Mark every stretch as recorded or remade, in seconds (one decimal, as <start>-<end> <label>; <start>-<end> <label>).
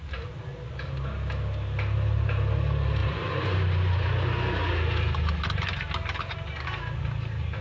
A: 0.0-3.0 recorded; 3.0-4.1 remade; 4.1-7.6 recorded